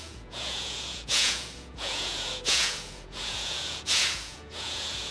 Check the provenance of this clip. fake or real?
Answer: fake